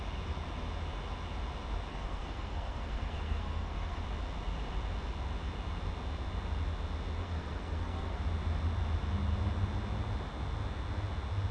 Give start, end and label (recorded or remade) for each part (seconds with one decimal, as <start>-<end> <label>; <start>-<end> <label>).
0.0-1.9 recorded; 1.9-4.0 remade; 4.0-7.2 recorded; 7.2-8.2 remade; 8.2-11.5 recorded